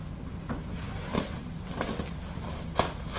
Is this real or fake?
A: real